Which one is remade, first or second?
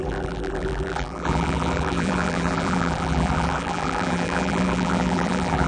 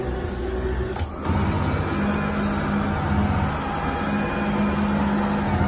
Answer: first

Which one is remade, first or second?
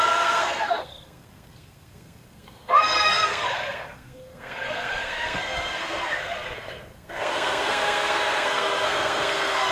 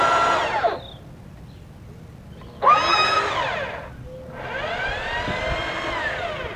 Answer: first